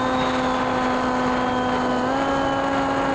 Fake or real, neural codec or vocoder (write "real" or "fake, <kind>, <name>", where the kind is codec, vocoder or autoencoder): real